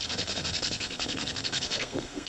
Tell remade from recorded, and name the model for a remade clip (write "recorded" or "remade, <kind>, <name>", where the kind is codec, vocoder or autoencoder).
remade, codec, SNAC